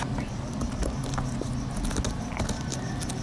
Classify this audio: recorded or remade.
recorded